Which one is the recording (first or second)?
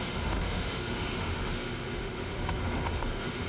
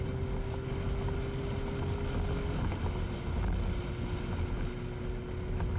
second